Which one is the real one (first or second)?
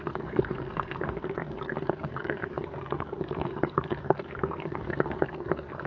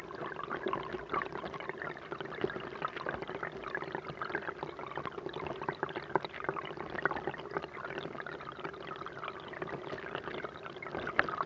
second